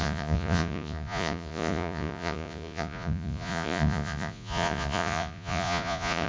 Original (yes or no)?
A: no